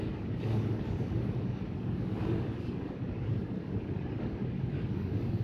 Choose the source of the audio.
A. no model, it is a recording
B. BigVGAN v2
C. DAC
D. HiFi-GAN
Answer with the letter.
C